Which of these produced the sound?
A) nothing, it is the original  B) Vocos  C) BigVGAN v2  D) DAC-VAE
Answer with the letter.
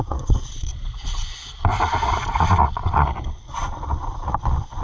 B